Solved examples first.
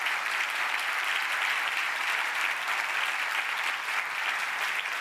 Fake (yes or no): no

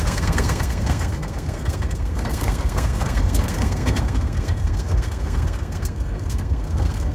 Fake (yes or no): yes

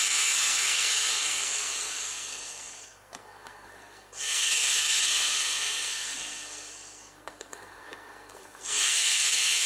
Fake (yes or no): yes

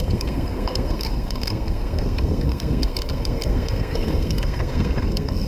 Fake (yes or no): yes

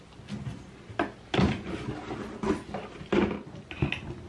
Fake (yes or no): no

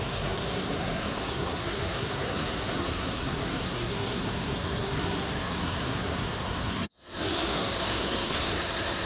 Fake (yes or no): yes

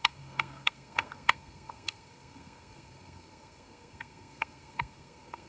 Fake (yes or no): yes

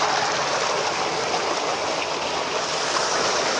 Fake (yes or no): no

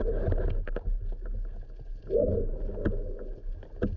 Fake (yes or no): no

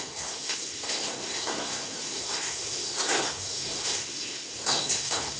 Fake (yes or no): yes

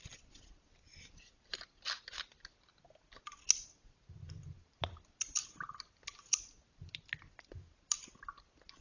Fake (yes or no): no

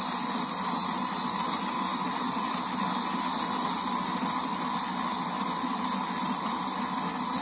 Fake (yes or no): no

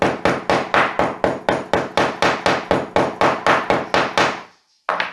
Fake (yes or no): no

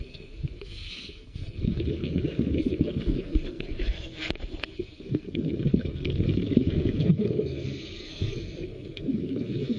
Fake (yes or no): yes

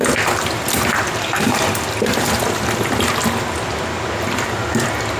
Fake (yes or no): no